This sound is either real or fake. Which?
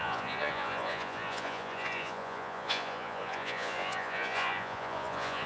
fake